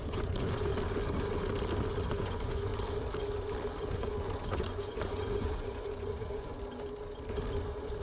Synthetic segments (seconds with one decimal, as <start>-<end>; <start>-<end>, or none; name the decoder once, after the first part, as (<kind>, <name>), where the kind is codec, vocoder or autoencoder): 0.0-0.7 (vocoder, Vocos); 2.1-2.7; 3.8-6.5